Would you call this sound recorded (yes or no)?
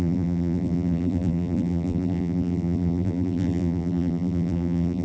no